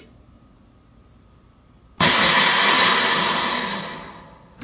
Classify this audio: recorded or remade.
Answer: recorded